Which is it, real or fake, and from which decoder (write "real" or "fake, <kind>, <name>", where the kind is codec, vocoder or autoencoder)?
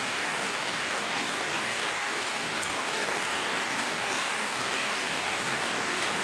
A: fake, codec, DAC